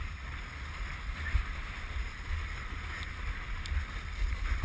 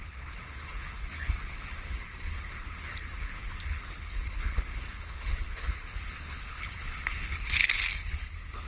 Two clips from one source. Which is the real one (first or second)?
first